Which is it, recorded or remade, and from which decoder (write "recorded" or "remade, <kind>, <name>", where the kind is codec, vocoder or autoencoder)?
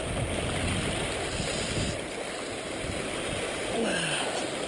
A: recorded